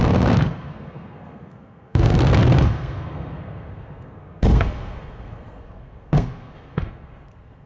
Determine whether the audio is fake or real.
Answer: fake